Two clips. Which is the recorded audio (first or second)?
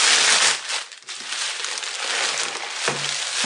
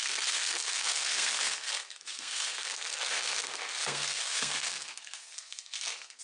first